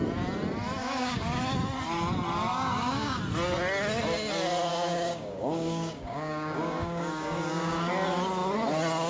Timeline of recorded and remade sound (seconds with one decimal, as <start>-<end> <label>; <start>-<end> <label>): 0.0-0.8 recorded; 0.8-1.4 remade; 1.4-2.5 recorded; 2.5-3.2 remade; 3.2-4.7 recorded; 4.7-7.9 remade; 7.9-9.1 recorded